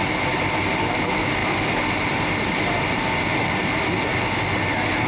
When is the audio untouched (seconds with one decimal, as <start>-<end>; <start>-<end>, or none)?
0.0-5.1